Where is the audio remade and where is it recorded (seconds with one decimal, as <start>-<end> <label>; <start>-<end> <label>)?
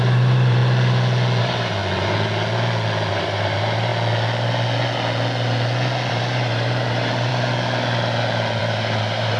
0.0-0.6 remade; 0.6-1.4 recorded; 1.4-1.8 remade; 1.8-3.1 recorded; 3.1-3.9 remade; 3.9-6.1 recorded; 6.1-7.3 remade; 7.3-8.6 recorded; 8.6-9.4 remade